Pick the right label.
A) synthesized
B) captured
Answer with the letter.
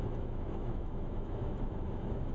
A